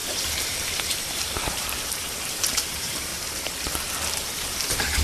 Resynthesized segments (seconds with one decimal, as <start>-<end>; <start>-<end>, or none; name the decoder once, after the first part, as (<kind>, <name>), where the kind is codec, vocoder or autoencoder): 0.0-3.1 (vocoder, BigVGAN v2); 4.1-5.0